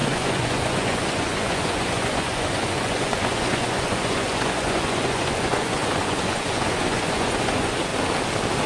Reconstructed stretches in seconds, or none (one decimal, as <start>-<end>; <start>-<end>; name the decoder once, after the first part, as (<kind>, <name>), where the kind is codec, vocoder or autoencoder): 0.0-7.9 (vocoder, Vocos)